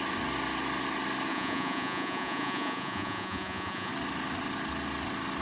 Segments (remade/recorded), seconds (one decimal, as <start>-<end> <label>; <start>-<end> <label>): 0.0-1.3 recorded; 1.3-3.9 remade; 3.9-5.4 recorded